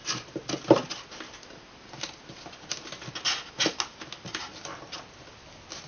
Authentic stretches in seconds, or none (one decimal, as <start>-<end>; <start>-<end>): 0.0-5.9